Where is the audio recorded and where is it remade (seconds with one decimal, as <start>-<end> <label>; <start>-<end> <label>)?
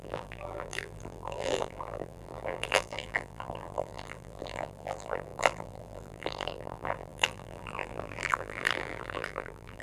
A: 0.0-9.8 remade